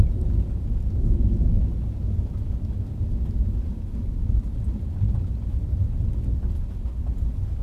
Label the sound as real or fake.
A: real